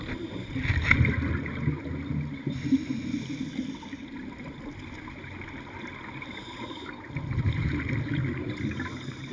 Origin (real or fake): real